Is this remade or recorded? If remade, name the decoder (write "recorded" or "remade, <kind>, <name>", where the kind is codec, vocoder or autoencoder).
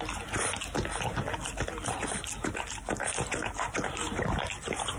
recorded